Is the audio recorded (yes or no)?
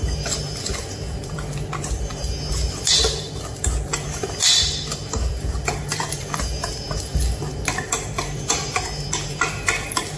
no